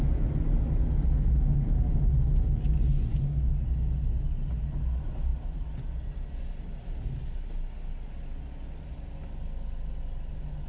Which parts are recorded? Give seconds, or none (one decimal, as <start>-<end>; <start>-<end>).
0.0-10.7